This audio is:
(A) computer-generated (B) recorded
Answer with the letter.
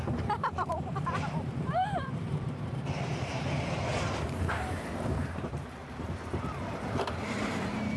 A